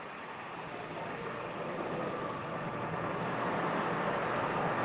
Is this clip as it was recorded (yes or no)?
yes